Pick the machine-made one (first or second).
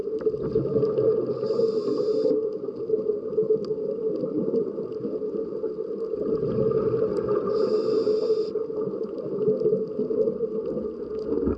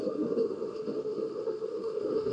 second